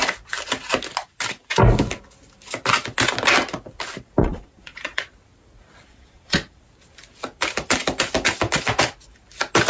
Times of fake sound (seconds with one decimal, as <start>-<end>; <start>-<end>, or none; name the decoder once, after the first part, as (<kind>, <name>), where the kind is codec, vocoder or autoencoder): 4.2-5.1 (vocoder, Vocos); 5.9-6.6